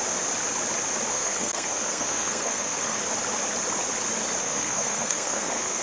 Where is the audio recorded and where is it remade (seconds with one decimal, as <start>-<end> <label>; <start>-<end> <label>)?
0.0-1.1 recorded; 1.1-3.0 remade; 3.0-4.4 recorded; 4.4-5.8 remade